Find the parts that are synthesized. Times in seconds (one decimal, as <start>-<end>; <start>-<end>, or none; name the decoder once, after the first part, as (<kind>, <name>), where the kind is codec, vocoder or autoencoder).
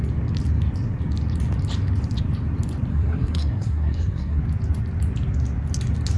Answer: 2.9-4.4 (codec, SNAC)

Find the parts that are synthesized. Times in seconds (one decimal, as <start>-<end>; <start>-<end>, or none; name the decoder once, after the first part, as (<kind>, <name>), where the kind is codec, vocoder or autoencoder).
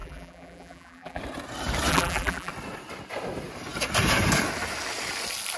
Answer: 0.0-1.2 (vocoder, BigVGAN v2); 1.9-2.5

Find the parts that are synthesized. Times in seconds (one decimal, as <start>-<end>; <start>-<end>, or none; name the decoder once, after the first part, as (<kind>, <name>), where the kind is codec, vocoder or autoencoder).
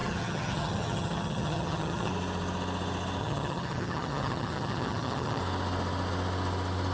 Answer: 0.0-2.1 (vocoder, HiFi-GAN); 3.2-5.4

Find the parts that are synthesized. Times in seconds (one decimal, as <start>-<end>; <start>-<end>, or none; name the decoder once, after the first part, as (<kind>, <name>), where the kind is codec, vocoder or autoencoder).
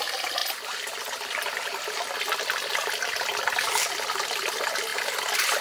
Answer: none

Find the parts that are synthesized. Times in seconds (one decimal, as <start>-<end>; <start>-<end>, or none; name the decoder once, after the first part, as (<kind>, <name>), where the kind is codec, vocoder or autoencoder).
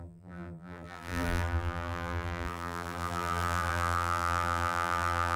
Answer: 0.0-5.4 (vocoder, BigVGAN v2)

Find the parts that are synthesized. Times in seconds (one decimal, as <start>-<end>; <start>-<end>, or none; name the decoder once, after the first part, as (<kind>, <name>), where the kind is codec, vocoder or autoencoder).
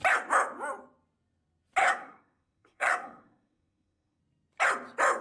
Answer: 1.8-4.2 (codec, SNAC)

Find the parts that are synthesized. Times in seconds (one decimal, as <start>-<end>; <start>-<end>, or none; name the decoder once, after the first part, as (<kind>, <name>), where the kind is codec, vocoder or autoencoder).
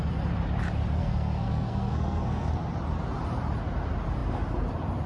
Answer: 1.0-2.5 (codec, SNAC)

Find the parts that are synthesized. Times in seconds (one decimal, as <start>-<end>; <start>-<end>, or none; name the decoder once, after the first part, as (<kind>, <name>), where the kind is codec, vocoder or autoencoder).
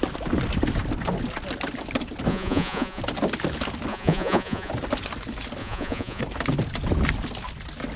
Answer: 2.3-3.0 (vocoder, Vocos); 3.9-4.7; 5.6-6.2